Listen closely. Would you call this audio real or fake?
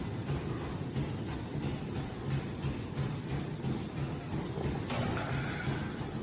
real